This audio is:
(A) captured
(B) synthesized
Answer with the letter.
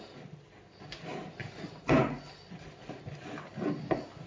A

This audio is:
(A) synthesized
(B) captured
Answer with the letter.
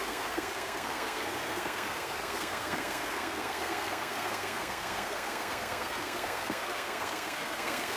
A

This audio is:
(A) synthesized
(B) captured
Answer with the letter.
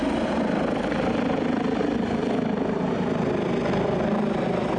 B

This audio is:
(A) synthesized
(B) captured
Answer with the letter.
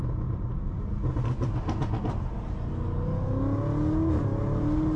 B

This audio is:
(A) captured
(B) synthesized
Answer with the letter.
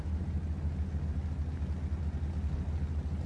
A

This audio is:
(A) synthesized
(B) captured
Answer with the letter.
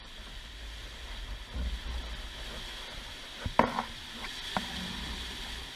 B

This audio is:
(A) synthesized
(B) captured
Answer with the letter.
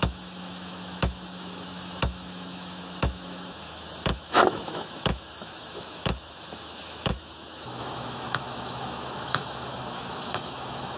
A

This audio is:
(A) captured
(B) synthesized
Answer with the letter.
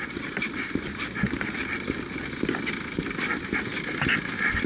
A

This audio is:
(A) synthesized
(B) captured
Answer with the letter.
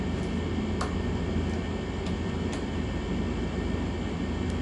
B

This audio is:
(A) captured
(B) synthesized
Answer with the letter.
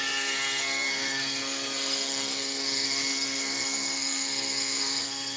B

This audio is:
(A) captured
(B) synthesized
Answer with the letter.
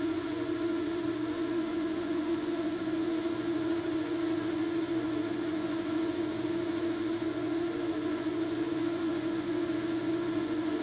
B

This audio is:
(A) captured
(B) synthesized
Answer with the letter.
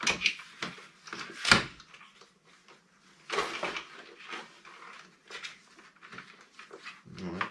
A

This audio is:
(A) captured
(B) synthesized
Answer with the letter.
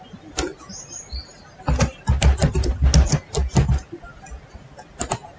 A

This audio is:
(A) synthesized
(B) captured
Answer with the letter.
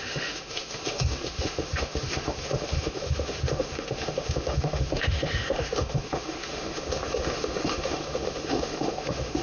A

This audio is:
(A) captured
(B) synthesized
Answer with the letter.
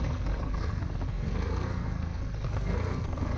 B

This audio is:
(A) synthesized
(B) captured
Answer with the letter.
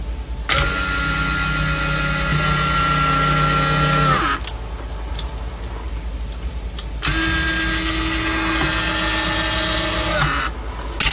B